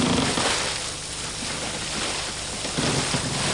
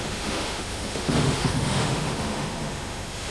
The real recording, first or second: first